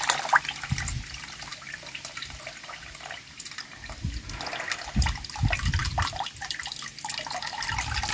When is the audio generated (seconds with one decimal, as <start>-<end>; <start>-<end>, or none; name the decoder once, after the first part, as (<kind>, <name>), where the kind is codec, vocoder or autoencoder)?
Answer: none